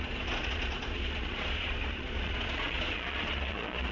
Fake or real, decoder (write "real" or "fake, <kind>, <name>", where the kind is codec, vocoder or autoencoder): fake, vocoder, Vocos